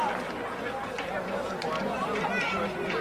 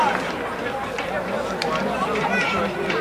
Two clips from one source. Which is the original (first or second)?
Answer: first